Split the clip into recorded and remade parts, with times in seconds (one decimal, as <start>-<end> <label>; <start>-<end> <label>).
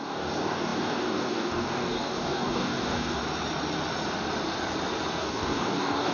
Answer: 0.0-3.2 remade; 3.2-5.2 recorded; 5.2-6.1 remade